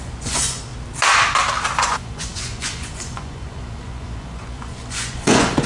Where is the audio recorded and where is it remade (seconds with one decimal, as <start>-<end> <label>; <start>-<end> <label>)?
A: 0.0-0.7 remade; 0.7-1.8 recorded; 1.8-5.7 remade